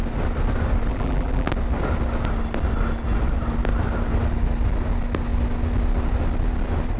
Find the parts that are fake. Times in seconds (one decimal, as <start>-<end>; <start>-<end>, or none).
0.9-1.5